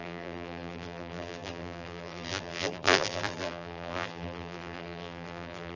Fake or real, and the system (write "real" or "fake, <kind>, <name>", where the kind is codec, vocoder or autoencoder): fake, vocoder, BigVGAN v2